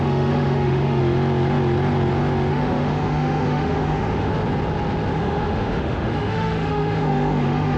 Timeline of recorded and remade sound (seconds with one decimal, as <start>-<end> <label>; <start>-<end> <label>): 0.0-1.0 remade; 1.0-2.5 recorded; 2.5-4.3 remade; 4.3-5.1 recorded; 5.1-7.8 remade